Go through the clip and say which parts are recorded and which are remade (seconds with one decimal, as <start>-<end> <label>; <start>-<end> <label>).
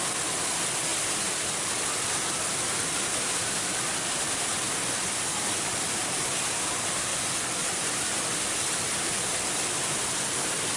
0.0-4.8 recorded; 4.8-5.3 remade; 5.3-7.1 recorded; 7.1-8.2 remade; 8.2-10.8 recorded